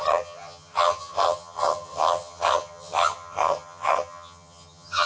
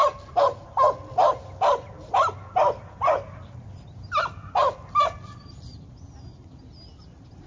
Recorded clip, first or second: second